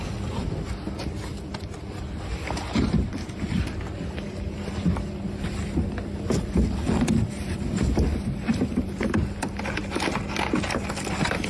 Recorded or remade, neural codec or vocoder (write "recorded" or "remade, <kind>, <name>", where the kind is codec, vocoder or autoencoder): remade, vocoder, BigVGAN v2